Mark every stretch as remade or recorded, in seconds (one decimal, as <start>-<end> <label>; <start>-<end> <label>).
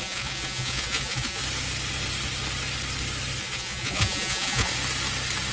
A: 0.0-1.4 remade; 1.4-3.4 recorded; 3.4-4.7 remade; 4.7-5.5 recorded